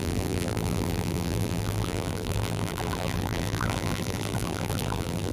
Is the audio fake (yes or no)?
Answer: yes